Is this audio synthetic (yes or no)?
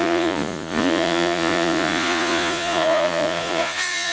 yes